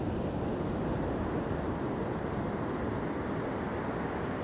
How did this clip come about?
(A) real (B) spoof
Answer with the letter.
A